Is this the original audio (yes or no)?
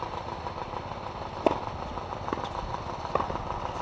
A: yes